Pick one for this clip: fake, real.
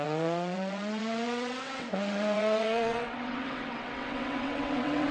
fake